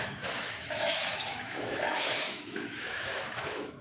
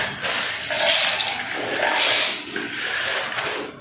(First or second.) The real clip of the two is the second